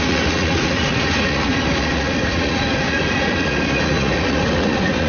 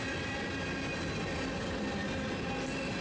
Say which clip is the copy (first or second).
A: first